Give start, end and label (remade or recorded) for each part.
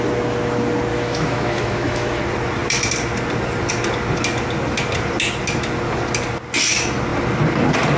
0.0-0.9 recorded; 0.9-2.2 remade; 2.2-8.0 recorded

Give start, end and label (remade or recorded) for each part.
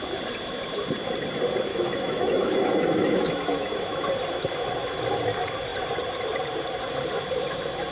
0.0-1.7 recorded; 1.7-3.8 remade; 3.8-7.9 recorded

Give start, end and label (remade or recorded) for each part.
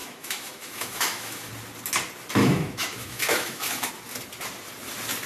0.0-1.5 remade; 1.5-2.4 recorded; 2.4-3.9 remade; 3.9-5.3 recorded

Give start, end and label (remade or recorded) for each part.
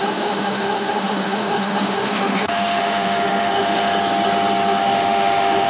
0.0-3.9 remade; 3.9-4.8 recorded; 4.8-5.7 remade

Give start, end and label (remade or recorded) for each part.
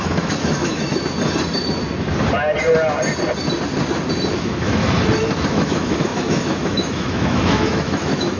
0.0-0.9 remade; 0.9-4.3 recorded; 4.3-4.8 remade; 4.8-5.5 recorded; 5.5-8.4 remade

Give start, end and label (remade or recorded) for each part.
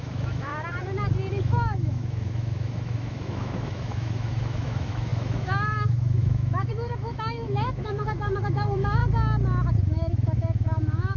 0.0-0.5 remade; 0.5-1.3 recorded; 1.3-9.0 remade; 9.0-9.8 recorded; 9.8-11.2 remade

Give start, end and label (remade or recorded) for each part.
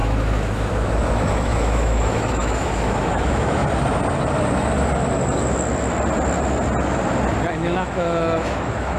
0.0-3.6 remade; 3.6-7.5 recorded; 7.5-9.0 remade